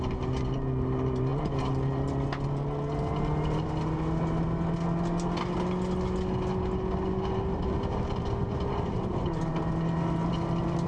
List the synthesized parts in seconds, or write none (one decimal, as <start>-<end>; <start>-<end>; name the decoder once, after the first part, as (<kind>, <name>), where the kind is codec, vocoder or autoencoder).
none